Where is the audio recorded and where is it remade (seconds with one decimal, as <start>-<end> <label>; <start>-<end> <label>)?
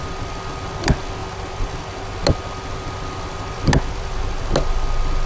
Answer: 0.0-5.3 recorded